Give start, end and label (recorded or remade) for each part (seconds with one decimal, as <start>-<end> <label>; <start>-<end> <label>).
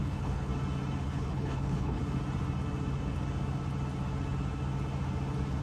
0.0-0.5 remade; 0.5-1.0 recorded; 1.0-2.0 remade; 2.0-5.6 recorded